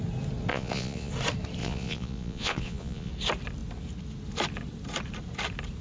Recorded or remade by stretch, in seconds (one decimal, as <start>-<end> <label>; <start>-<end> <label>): 0.0-0.5 recorded; 0.5-1.1 remade; 1.1-1.6 recorded; 1.6-3.1 remade; 3.1-5.8 recorded